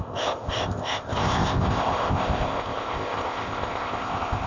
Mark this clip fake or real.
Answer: fake